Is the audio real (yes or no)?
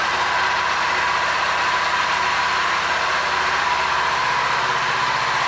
yes